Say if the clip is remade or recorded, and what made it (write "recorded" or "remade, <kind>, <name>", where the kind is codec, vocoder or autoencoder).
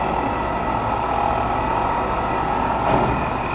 recorded